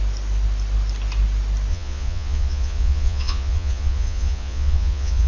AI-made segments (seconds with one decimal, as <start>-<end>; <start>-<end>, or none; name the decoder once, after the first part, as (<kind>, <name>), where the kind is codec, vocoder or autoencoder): 1.7-5.3 (vocoder, Vocos)